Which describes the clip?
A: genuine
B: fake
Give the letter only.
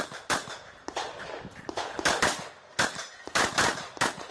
A